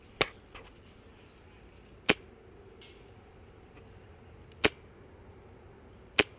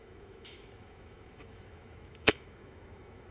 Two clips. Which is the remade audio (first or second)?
second